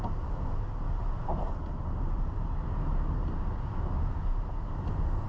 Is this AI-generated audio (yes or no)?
no